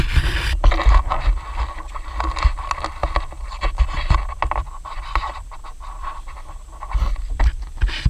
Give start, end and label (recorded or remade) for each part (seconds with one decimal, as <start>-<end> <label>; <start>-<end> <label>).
0.0-8.1 recorded

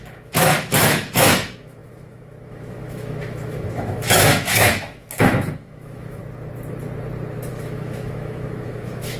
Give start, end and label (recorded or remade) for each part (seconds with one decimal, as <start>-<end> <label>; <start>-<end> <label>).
0.0-6.2 remade; 6.2-7.5 recorded; 7.5-9.2 remade